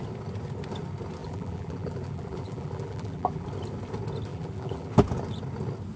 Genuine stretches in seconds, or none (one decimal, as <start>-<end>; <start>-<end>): 0.0-1.2; 3.5-4.3; 4.9-6.0